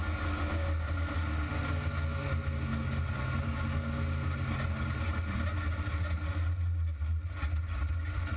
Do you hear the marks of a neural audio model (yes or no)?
no